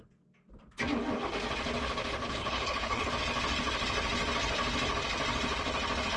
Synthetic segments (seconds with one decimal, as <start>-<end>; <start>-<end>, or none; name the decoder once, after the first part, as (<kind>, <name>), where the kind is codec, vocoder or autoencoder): 2.2-3.1 (codec, HILCodec)